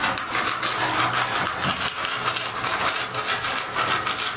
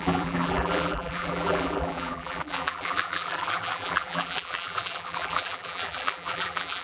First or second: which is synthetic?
second